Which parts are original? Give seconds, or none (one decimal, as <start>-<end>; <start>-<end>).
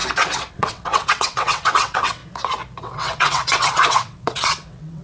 0.0-0.5; 2.2-2.8